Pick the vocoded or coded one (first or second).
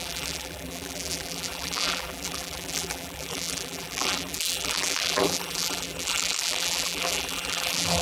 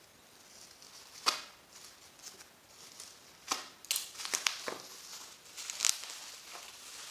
first